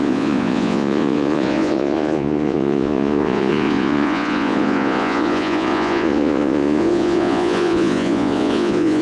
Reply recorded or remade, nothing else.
remade